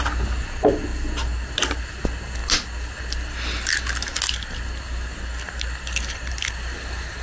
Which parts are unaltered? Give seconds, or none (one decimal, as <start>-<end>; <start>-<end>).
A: 0.0-7.2